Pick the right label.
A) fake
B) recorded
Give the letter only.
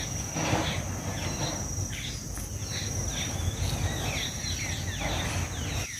B